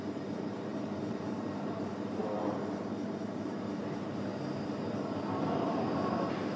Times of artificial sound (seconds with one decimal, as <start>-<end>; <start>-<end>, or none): 0.0-4.3

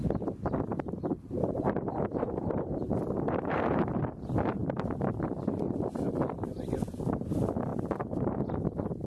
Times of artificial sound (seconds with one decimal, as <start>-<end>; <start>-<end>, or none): 0.7-4.0; 7.7-8.5

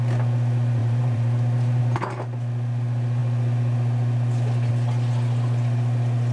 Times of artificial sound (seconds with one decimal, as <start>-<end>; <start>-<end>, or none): 0.8-1.8

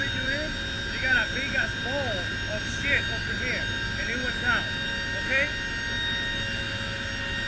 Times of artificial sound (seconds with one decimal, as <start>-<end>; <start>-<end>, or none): none

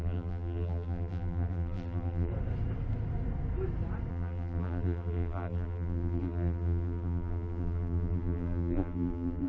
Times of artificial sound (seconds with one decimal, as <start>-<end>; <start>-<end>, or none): 0.0-2.3; 4.1-9.5

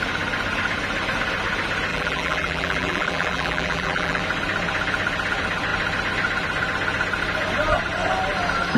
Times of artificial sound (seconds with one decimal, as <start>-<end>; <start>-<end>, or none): 1.9-4.2

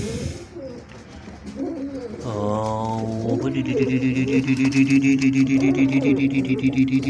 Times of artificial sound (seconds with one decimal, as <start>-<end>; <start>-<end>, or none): 3.2-3.8; 4.3-7.1

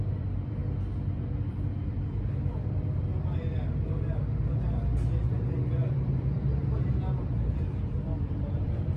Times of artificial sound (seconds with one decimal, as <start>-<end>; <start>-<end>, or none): 0.0-0.6; 1.5-3.1; 5.9-6.6; 8.3-9.0